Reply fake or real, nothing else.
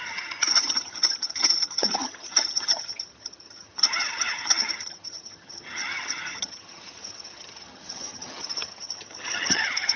fake